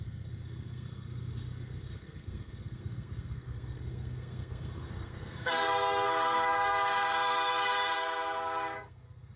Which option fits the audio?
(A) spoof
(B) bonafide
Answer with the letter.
A